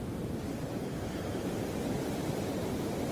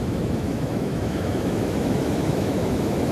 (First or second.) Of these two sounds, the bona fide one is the first